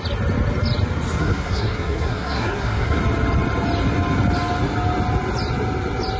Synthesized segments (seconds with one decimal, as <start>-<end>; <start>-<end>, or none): 1.2-3.0